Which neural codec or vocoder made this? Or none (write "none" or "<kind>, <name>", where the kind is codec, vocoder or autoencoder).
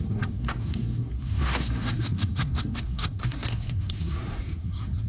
codec, SNAC